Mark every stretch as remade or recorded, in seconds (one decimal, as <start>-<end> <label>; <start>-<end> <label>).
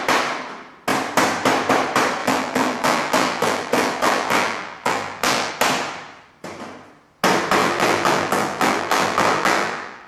0.0-2.2 recorded; 2.2-5.5 remade; 5.5-7.6 recorded; 7.6-10.1 remade